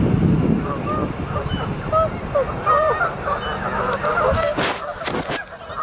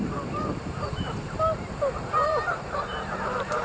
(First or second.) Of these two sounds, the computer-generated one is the second